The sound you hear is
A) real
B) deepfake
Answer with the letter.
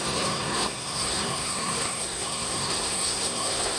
B